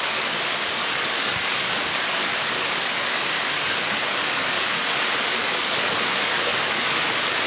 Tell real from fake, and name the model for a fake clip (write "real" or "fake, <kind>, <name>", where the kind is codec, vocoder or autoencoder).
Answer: fake, codec, DAC